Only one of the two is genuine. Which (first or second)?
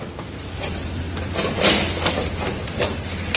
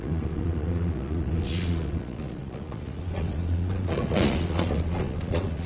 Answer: first